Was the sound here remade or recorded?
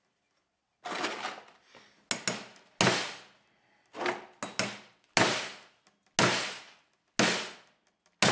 recorded